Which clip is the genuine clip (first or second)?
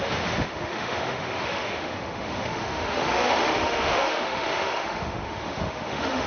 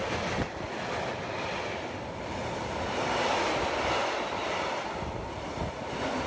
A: second